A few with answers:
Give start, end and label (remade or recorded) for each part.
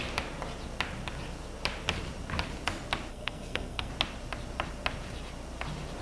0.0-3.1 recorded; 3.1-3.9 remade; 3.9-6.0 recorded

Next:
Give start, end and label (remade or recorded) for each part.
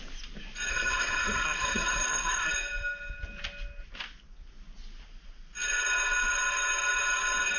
0.0-0.7 recorded; 0.7-2.5 remade; 2.5-7.6 recorded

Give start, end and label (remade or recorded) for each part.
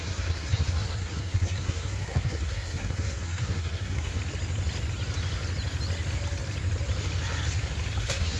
0.0-4.2 remade; 4.2-8.0 recorded; 8.0-8.4 remade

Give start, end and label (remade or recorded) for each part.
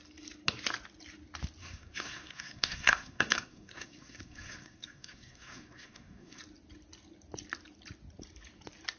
0.0-1.6 recorded; 1.6-6.4 remade; 6.4-9.0 recorded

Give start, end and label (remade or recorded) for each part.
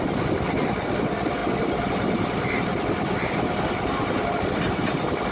0.0-5.3 recorded